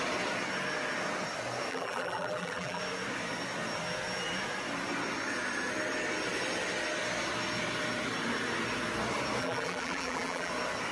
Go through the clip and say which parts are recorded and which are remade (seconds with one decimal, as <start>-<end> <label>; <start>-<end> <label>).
0.0-1.7 recorded; 1.7-2.8 remade; 2.8-9.4 recorded; 9.4-10.5 remade; 10.5-10.9 recorded